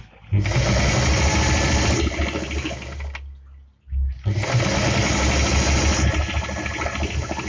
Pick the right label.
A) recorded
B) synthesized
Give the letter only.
A